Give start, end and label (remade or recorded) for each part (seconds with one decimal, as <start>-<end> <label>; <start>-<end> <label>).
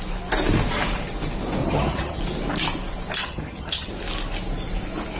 0.0-1.6 recorded; 1.6-2.2 remade; 2.2-3.2 recorded; 3.2-3.9 remade; 3.9-5.2 recorded